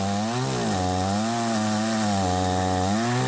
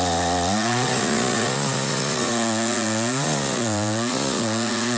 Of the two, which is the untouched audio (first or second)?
first